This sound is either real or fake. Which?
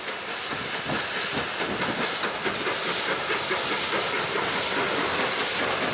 real